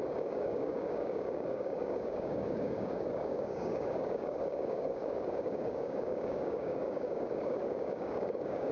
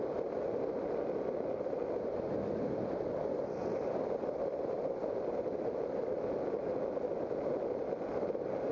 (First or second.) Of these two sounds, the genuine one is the second